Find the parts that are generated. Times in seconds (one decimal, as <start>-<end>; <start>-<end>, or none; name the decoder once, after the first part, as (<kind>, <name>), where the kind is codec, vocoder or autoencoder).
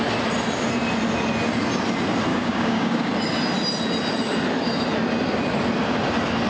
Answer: 2.3-3.1 (codec, DAC)